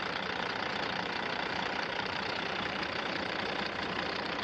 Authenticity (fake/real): fake